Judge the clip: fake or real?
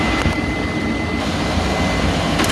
real